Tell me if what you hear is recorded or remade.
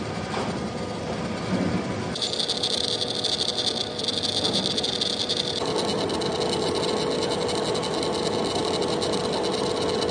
recorded